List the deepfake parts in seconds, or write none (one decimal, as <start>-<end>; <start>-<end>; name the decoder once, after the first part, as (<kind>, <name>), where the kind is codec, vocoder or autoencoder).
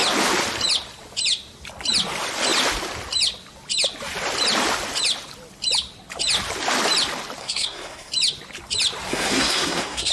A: 7.4-8.1 (codec, SNAC); 9.1-10.1